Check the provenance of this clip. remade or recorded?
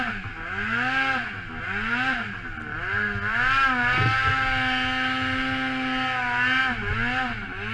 recorded